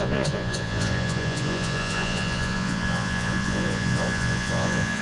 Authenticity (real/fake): fake